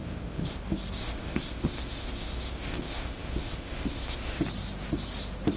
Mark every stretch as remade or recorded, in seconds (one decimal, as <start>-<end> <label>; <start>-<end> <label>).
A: 0.0-0.6 remade; 0.6-1.0 recorded; 1.0-4.4 remade; 4.4-5.6 recorded